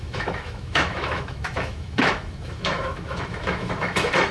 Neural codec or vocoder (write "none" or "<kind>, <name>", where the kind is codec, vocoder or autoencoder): autoencoder, DAC-VAE